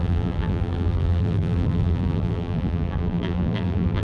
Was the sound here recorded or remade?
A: remade